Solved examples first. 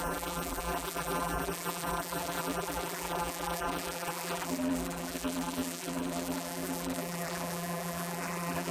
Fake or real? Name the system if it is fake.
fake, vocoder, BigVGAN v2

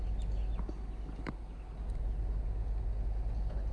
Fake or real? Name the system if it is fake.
real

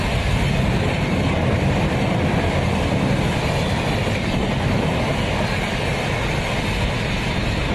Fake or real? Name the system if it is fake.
real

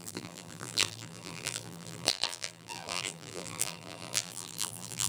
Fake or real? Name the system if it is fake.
fake, vocoder, BigVGAN v2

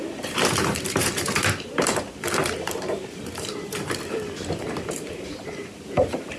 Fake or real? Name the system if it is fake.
fake, vocoder, BigVGAN v2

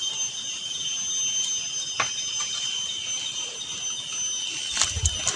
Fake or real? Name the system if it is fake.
real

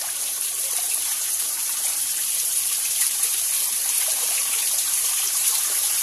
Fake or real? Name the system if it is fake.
fake, vocoder, BigVGAN v2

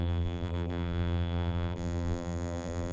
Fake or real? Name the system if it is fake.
fake, vocoder, BigVGAN v2